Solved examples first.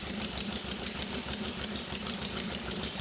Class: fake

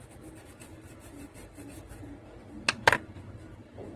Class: fake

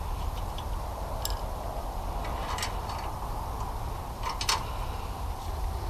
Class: real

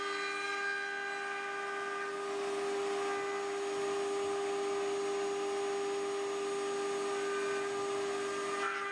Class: real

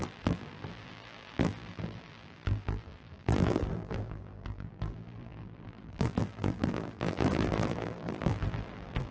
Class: fake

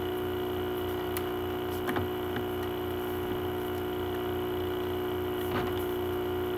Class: real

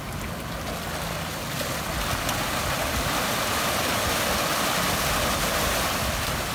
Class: real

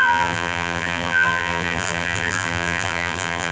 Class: fake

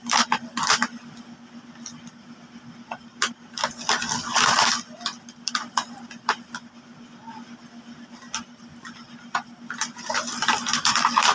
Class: fake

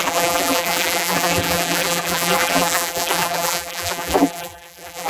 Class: fake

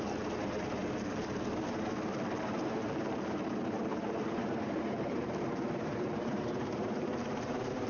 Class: fake